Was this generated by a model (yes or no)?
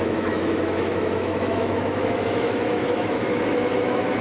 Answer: yes